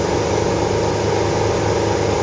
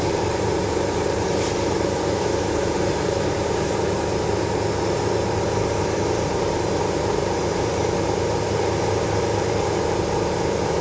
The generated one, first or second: second